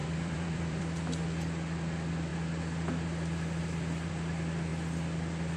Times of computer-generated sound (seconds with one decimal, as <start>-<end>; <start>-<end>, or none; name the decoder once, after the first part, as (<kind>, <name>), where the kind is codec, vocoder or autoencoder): 0.0-0.8 (vocoder, BigVGAN v2)